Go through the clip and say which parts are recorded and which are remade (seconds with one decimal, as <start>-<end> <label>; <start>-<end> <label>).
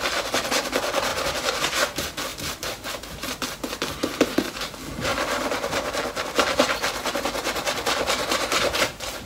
0.0-2.3 recorded; 2.3-3.4 remade; 3.4-5.1 recorded; 5.1-5.9 remade; 5.9-9.3 recorded